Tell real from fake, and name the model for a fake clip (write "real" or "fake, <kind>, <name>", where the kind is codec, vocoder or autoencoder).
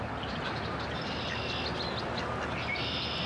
real